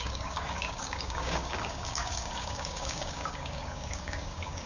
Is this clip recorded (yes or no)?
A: no